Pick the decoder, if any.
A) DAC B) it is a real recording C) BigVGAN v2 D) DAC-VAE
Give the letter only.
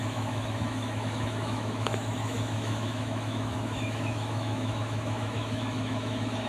D